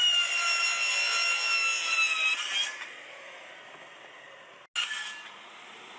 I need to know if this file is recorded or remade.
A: recorded